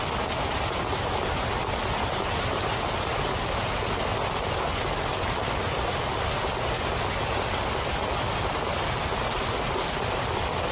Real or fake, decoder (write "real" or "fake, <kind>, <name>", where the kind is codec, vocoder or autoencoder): real